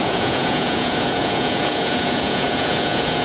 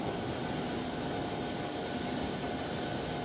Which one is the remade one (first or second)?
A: first